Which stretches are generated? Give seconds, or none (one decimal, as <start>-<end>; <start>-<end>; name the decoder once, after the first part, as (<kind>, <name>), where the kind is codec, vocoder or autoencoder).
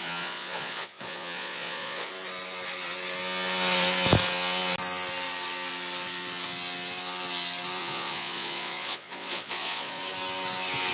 0.0-2.1 (vocoder, Vocos); 7.8-10.0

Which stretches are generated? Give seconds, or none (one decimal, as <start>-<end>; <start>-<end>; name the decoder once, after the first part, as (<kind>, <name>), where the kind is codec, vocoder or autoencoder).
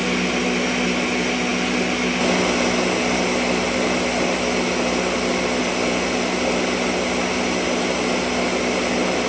none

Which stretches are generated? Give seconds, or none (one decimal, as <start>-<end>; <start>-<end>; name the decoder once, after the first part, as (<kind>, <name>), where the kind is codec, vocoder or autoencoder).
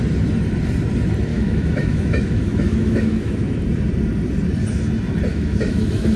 1.3-3.6 (autoencoder, DAC-VAE); 5.3-6.2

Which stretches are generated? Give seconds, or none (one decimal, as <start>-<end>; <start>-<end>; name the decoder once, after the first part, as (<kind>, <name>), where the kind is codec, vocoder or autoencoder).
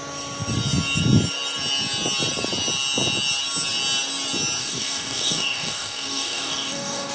4.6-7.1 (codec, DAC)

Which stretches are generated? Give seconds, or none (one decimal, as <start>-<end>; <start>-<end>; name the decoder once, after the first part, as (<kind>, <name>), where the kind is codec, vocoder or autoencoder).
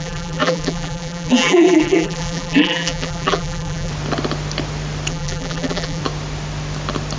0.0-3.9 (vocoder, BigVGAN v2); 5.1-6.0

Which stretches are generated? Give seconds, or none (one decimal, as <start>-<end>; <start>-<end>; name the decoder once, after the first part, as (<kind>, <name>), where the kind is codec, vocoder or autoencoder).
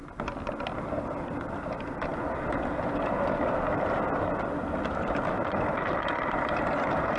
none